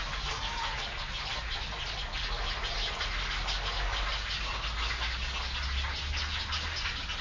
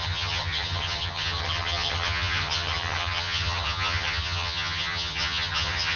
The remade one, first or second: second